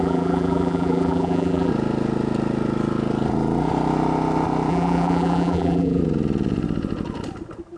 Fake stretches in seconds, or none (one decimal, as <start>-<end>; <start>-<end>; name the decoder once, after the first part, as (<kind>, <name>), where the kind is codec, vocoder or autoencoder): 0.0-1.7 (vocoder, BigVGAN v2); 4.7-6.0